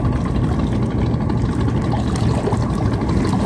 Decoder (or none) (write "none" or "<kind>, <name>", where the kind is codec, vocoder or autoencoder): none